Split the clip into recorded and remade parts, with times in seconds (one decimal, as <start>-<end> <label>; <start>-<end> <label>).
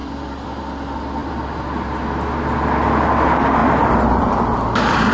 0.0-0.6 remade; 0.6-1.2 recorded; 1.2-1.9 remade; 1.9-3.6 recorded; 3.6-5.1 remade